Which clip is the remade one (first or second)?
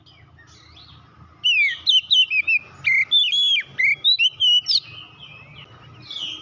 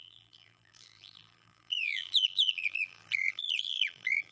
second